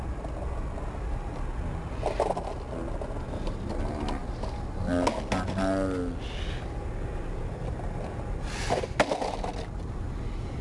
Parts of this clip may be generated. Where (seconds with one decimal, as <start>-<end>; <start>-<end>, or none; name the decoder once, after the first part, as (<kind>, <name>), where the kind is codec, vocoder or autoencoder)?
none